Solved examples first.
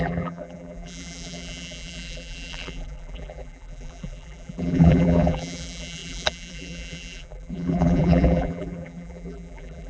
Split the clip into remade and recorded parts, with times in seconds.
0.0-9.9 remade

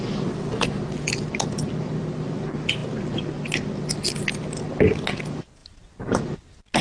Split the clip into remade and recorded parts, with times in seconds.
0.0-6.8 recorded